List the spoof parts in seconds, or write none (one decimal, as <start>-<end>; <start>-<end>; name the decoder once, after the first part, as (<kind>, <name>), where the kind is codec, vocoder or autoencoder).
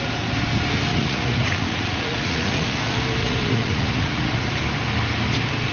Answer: 0.9-2.8 (vocoder, Vocos); 3.2-4.5